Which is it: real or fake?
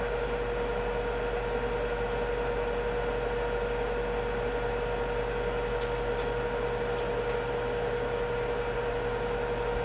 real